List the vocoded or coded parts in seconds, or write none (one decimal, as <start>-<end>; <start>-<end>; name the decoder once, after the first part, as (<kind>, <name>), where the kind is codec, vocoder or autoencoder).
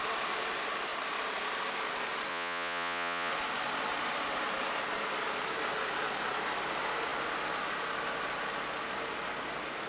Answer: 2.3-3.3 (vocoder, Vocos)